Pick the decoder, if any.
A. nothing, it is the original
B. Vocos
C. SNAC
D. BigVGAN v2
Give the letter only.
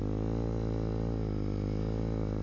A